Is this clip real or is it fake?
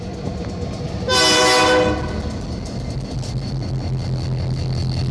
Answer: real